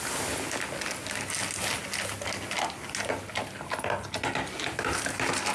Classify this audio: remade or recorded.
recorded